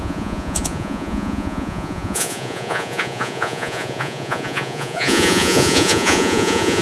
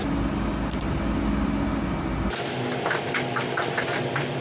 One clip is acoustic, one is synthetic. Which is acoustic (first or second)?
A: second